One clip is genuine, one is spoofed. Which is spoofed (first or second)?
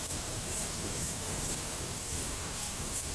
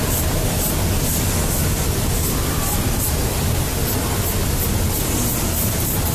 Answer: first